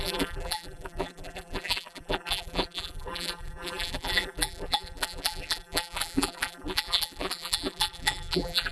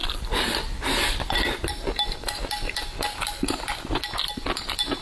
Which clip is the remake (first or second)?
first